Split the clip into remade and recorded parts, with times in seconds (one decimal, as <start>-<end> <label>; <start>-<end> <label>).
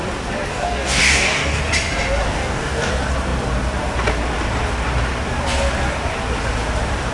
0.0-0.5 recorded; 0.5-1.6 remade; 1.6-2.2 recorded; 2.2-2.9 remade; 2.9-7.1 recorded